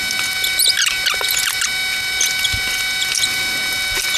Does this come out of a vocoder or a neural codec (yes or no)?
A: no